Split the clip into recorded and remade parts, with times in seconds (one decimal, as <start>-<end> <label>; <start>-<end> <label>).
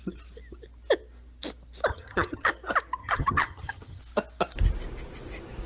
0.0-1.9 recorded; 1.9-2.5 remade; 2.5-3.0 recorded; 3.0-4.0 remade; 4.0-5.7 recorded